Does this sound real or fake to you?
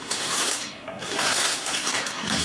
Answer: fake